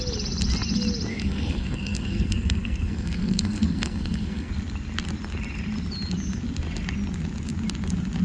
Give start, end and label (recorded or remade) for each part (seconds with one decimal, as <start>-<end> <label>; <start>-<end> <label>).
0.0-1.1 recorded; 1.1-4.5 remade; 4.5-8.2 recorded